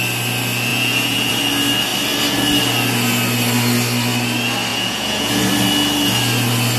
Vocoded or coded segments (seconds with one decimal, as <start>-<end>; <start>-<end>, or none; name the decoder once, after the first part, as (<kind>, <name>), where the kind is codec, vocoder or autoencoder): 0.7-1.3 (vocoder, Vocos); 4.7-5.4